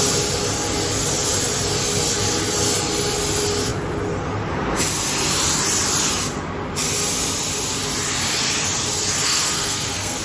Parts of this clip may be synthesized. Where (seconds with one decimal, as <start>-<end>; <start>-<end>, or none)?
9.2-10.2